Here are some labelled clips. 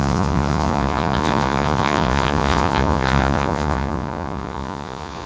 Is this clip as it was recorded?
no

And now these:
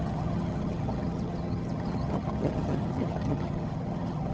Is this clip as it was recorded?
no